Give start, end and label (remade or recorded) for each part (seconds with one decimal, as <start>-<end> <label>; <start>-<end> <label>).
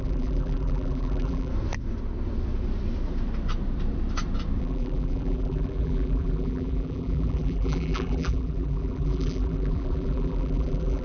0.0-1.5 remade; 1.5-4.6 recorded; 4.6-11.0 remade